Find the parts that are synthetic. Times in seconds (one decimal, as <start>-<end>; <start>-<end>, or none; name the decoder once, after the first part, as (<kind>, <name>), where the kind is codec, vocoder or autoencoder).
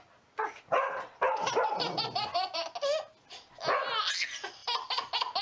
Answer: none